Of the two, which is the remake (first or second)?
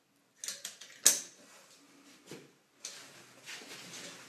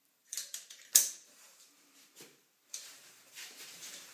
second